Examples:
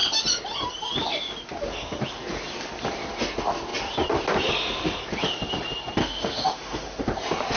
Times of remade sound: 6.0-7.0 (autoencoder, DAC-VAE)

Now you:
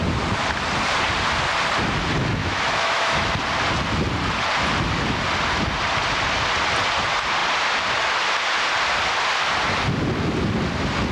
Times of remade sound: 2.4-3.3 (autoencoder, DAC-VAE)